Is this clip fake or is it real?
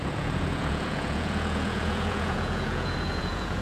fake